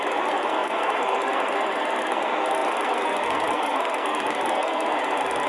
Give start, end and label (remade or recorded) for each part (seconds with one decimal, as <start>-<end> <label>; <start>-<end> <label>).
0.0-5.5 remade